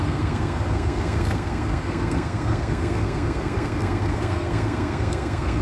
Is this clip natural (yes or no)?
no